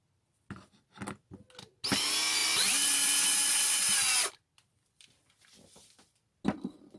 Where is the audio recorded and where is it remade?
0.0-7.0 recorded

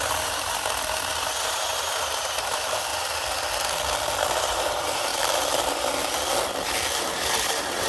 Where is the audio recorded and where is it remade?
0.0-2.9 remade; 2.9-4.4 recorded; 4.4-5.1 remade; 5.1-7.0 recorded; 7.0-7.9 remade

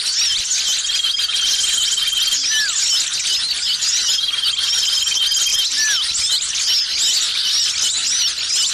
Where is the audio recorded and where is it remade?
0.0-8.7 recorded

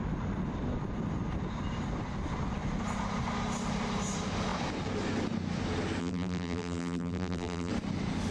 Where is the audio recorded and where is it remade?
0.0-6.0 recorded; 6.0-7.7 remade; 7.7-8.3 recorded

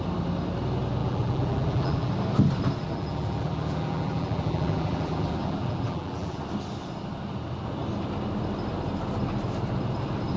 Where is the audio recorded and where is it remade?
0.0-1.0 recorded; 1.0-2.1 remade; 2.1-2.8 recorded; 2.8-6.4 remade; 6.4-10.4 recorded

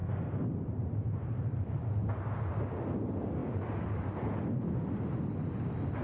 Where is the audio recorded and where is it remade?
0.0-2.2 remade; 2.2-6.0 recorded

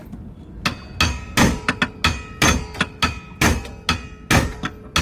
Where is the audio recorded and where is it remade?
0.0-5.0 recorded